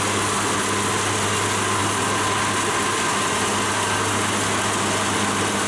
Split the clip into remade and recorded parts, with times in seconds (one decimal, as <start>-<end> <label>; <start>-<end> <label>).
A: 0.0-5.7 recorded